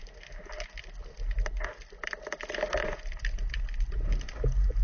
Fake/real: real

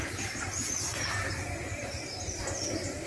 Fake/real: fake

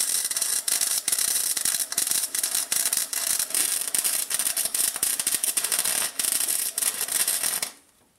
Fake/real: fake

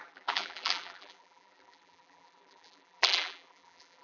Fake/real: fake